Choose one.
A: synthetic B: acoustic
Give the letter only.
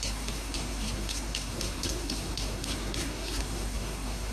A